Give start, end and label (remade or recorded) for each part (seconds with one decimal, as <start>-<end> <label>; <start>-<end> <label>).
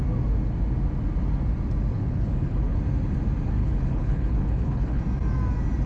0.0-1.9 recorded; 1.9-2.8 remade; 2.8-3.6 recorded; 3.6-5.0 remade; 5.0-5.9 recorded